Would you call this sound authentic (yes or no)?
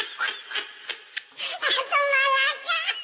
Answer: yes